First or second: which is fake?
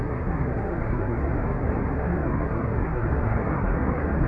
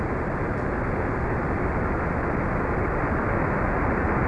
first